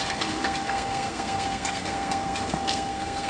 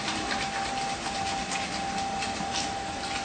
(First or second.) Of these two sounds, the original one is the second